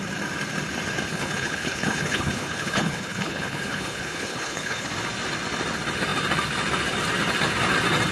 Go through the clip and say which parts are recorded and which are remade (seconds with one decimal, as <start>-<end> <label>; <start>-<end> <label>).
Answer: 0.0-1.1 recorded; 1.1-4.9 remade; 4.9-8.1 recorded